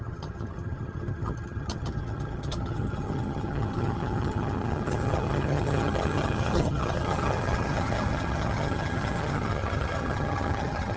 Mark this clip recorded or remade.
remade